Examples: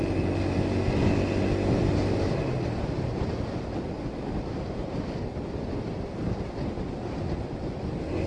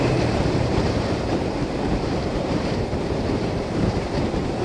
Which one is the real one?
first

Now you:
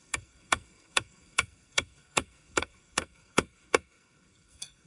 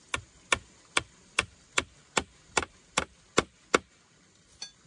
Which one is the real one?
second